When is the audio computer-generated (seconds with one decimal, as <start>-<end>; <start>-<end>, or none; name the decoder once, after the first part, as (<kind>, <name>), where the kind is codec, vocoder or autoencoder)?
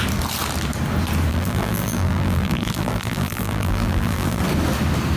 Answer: 1.3-4.4 (vocoder, BigVGAN v2)